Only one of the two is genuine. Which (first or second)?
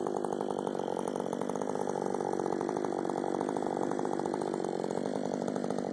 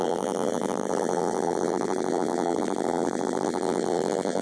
first